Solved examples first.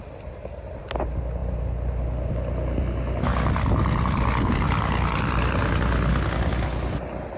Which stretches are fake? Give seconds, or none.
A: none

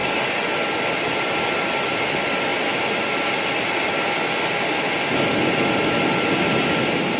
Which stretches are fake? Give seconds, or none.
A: 0.0-2.5 (vocoder, BigVGAN v2); 6.5-7.2

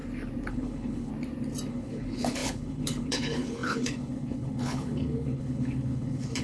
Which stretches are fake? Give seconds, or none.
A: 0.5-1.1 (codec, HILCodec); 1.7-6.4

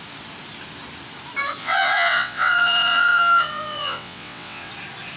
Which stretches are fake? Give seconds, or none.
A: 1.6-4.7 (vocoder, WaveNeXt)